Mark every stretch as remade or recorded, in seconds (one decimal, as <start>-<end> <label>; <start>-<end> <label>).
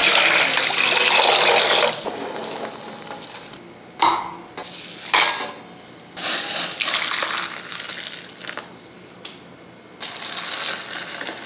0.0-11.5 recorded